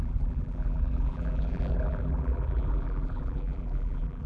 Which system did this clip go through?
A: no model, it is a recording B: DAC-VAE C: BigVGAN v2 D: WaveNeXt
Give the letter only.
C